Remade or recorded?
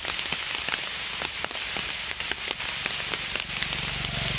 recorded